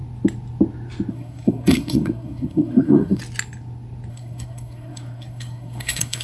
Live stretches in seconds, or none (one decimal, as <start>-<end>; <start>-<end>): 0.0-1.1; 3.2-4.1